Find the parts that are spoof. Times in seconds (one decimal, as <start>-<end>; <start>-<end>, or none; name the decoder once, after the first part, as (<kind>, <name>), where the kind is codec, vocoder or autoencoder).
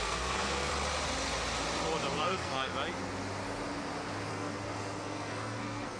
0.0-0.7 (codec, SNAC); 2.2-2.7; 4.3-6.0